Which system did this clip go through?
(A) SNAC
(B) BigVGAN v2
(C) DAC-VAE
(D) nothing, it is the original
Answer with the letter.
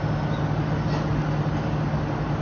D